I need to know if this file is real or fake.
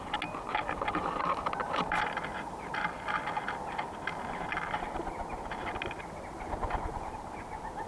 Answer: real